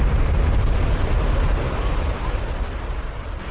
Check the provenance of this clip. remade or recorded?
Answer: recorded